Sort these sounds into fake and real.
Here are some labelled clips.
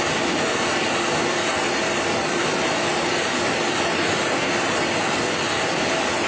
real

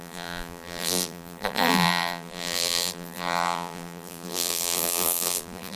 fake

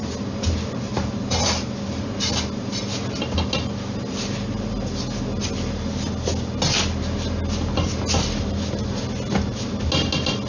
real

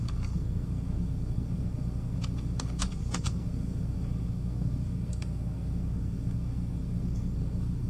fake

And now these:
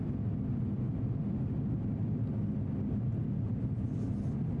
real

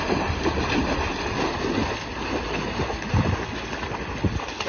real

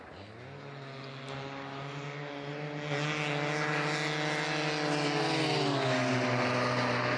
real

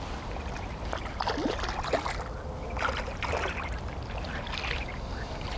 real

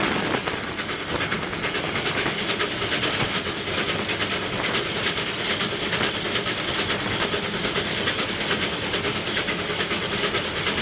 real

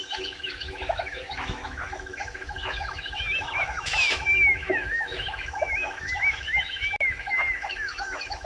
fake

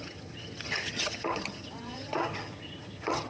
fake